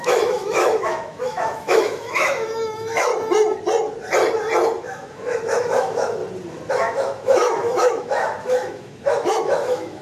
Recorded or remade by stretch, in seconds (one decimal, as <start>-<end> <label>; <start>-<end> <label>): 0.0-3.1 remade; 3.1-4.8 recorded; 4.8-6.2 remade; 6.2-6.7 recorded; 6.7-10.0 remade